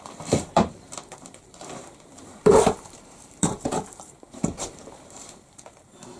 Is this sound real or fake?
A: fake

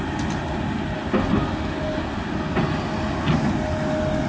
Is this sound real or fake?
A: real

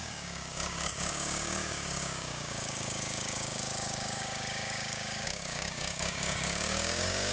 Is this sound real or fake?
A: fake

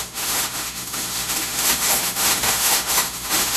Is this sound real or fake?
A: fake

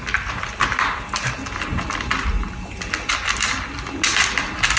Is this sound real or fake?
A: real